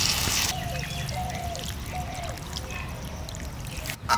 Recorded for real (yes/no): yes